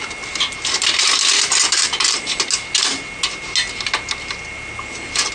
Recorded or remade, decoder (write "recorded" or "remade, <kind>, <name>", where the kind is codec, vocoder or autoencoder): recorded